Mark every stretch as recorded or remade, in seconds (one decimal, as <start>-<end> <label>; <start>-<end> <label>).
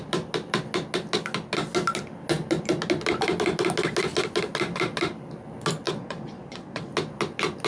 0.0-6.0 recorded; 6.0-6.9 remade; 6.9-7.7 recorded